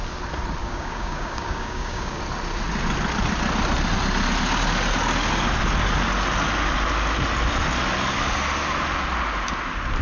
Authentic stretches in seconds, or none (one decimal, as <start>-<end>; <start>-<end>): 0.0-0.6; 2.2-10.0